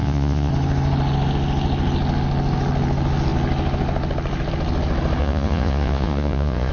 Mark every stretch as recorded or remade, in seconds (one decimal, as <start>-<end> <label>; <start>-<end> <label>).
0.0-0.5 remade; 0.5-5.2 recorded; 5.2-6.7 remade